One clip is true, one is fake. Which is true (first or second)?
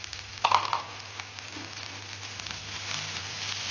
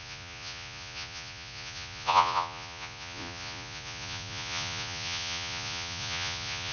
first